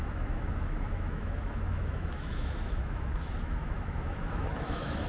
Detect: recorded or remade remade